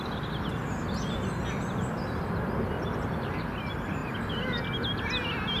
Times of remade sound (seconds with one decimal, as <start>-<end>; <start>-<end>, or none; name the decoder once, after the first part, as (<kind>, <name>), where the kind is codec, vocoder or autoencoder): none